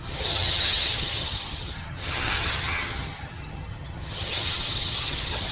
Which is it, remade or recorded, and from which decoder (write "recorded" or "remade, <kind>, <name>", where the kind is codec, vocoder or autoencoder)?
remade, vocoder, HiFi-GAN